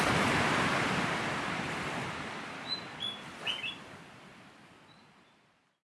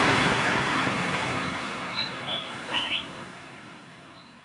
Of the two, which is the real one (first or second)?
first